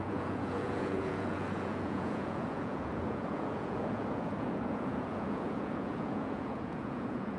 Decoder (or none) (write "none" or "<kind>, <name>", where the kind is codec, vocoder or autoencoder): vocoder, Vocos